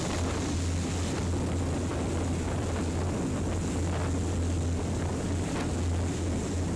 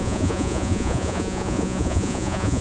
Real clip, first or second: first